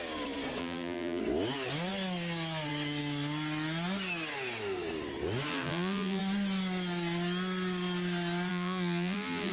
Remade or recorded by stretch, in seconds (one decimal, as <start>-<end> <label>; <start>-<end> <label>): 0.0-0.6 recorded; 0.6-1.2 remade; 1.2-5.5 recorded; 5.5-6.2 remade; 6.2-8.5 recorded; 8.5-9.5 remade